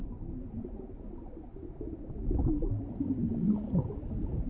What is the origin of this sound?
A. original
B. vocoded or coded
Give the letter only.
A